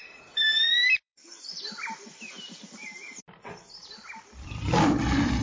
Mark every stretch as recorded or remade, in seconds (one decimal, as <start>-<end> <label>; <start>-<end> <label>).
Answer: 0.0-3.2 remade; 3.2-3.8 recorded; 3.8-4.7 remade; 4.7-5.4 recorded

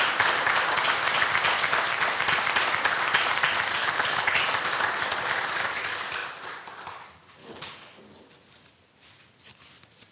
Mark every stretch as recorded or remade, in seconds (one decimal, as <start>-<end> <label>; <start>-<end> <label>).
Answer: 0.0-3.8 recorded; 3.8-4.4 remade; 4.4-7.4 recorded; 7.4-8.0 remade; 8.0-10.1 recorded

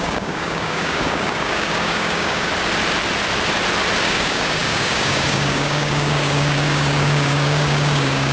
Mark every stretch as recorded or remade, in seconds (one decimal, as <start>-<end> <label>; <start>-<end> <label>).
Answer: 0.0-2.5 remade; 2.5-4.0 recorded; 4.0-8.3 remade

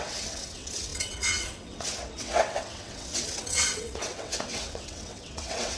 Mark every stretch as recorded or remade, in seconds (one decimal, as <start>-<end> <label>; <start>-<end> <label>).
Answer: 0.0-5.8 remade

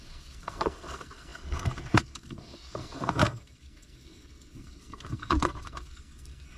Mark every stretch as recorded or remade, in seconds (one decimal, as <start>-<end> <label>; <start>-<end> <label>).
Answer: 0.0-6.6 remade

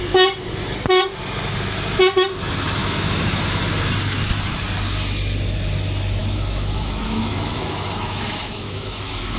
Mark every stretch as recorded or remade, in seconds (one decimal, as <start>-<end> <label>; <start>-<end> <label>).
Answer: 0.0-2.8 recorded; 2.8-3.6 remade; 3.6-6.2 recorded; 6.2-9.4 remade

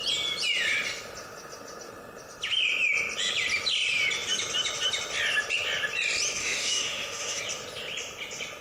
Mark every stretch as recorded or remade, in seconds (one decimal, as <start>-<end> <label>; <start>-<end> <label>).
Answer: 0.0-6.4 recorded; 6.4-7.4 remade; 7.4-8.6 recorded